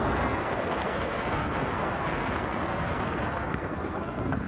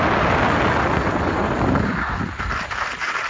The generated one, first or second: first